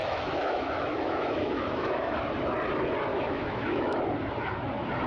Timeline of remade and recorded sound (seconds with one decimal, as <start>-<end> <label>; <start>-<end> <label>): 0.0-2.2 remade; 2.2-3.1 recorded; 3.1-4.0 remade; 4.0-5.1 recorded